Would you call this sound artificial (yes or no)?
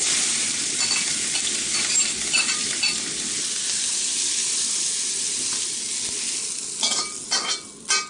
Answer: no